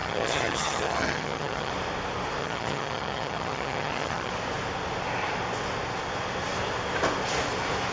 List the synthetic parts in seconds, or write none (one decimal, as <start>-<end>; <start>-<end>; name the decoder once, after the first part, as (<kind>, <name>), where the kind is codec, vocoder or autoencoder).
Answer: 0.0-1.7 (vocoder, HiFi-GAN); 2.4-4.3